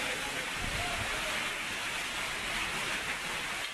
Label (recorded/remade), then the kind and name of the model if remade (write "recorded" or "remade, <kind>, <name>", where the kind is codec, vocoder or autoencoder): recorded